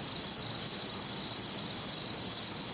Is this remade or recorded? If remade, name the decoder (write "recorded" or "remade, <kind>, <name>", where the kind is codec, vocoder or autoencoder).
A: recorded